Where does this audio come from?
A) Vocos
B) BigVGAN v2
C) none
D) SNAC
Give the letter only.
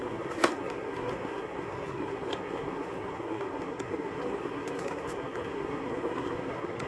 D